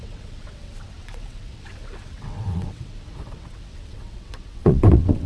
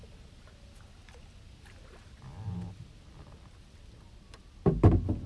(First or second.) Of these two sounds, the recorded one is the second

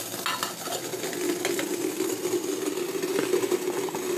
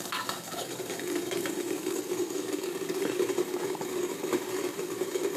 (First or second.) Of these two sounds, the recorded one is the first